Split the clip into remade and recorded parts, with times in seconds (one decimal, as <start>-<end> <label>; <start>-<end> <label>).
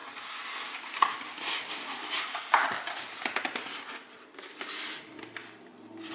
0.0-6.1 recorded